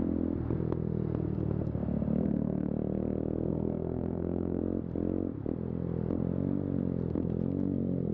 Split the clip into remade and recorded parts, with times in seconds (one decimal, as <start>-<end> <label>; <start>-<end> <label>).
0.0-2.2 recorded; 2.2-2.7 remade; 2.7-3.5 recorded; 3.5-4.6 remade; 4.6-8.1 recorded